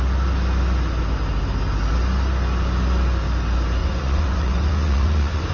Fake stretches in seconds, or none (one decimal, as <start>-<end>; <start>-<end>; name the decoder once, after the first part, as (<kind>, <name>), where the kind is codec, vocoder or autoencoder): 3.8-5.5 (vocoder, Vocos)